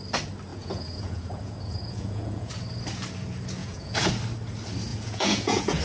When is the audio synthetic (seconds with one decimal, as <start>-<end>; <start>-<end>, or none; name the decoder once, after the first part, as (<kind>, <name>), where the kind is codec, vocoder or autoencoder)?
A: 0.5-2.5 (vocoder, Vocos); 3.6-4.1; 4.9-5.8